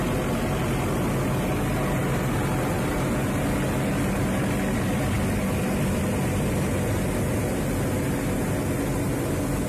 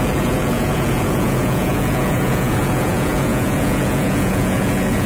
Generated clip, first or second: second